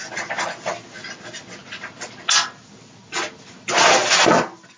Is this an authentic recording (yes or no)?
yes